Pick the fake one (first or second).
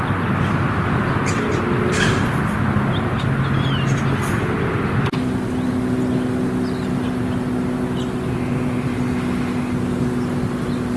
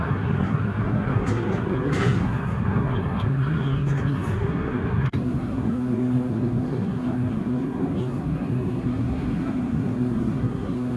second